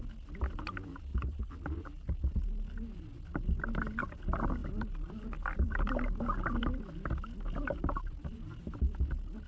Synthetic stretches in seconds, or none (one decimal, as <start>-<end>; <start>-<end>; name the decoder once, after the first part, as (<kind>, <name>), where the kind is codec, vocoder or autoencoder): 1.1-2.3 (vocoder, BigVGAN v2); 4.6-5.9